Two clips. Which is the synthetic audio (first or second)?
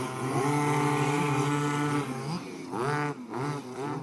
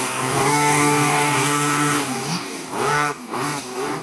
second